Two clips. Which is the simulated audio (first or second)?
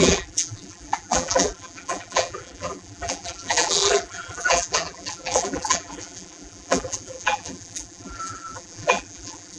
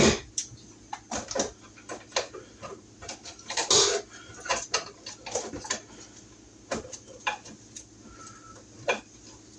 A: first